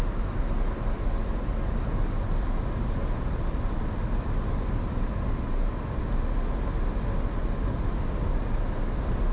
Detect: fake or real real